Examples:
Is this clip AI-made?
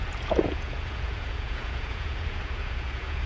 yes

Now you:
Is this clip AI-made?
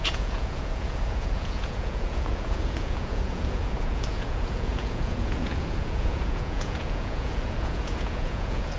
yes